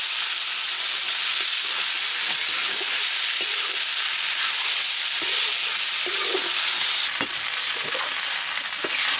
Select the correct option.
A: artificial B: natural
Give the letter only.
B